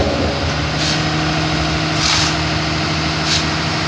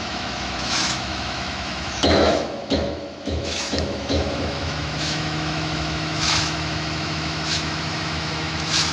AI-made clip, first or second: second